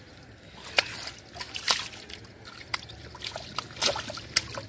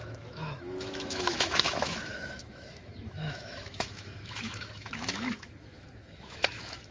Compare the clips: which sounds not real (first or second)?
second